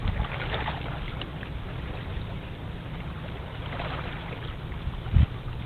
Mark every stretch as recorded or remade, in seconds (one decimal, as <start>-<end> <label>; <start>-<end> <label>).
0.0-5.7 recorded